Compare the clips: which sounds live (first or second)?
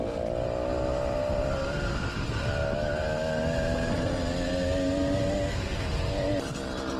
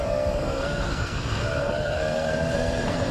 first